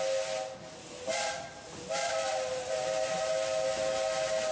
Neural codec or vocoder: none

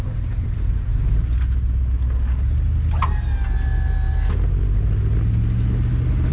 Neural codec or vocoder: none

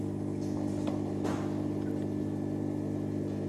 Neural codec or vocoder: none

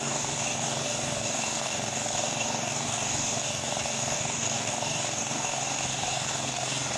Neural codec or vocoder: codec, DAC